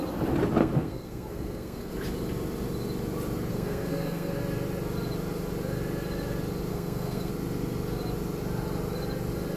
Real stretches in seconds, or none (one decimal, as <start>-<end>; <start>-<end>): 0.0-0.6; 1.9-3.5; 4.4-6.7; 7.3-9.6

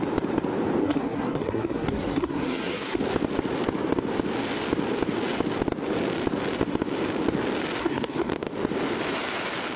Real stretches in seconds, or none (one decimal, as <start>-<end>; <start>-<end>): 0.0-0.8; 3.0-7.8; 8.3-9.8

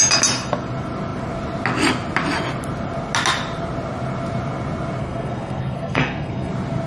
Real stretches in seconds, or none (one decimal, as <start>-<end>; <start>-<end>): 0.0-5.0; 6.5-6.9

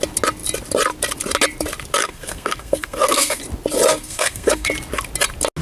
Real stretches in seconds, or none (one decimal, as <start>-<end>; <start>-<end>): 0.0-2.0; 3.4-3.9; 4.7-5.6